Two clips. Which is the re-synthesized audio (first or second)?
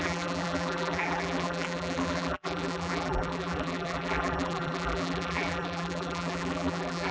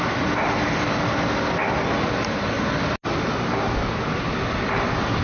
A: first